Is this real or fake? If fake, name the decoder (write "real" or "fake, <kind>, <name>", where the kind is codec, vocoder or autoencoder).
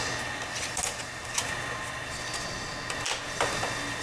real